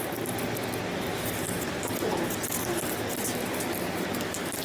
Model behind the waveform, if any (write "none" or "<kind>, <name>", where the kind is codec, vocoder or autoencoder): none